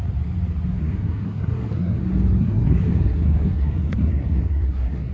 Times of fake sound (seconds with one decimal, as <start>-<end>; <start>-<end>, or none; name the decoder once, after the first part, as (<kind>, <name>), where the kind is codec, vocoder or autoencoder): 0.8-2.0 (codec, SNAC); 2.4-5.1